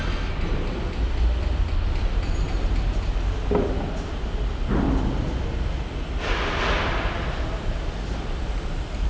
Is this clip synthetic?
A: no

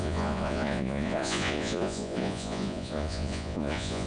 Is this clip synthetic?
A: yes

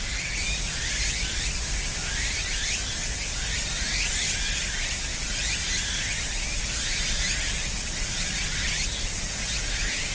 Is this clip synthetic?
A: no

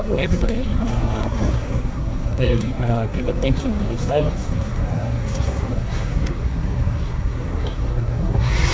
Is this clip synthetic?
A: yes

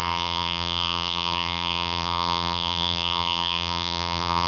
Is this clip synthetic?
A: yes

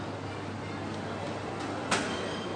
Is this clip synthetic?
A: no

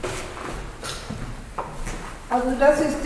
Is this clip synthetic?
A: no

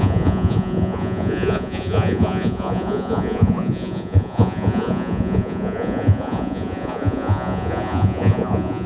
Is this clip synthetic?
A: yes